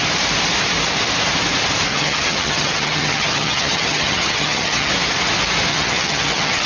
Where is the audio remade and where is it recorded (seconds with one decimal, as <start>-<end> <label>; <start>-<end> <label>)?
0.0-1.9 recorded; 1.9-4.9 remade; 4.9-5.7 recorded; 5.7-6.7 remade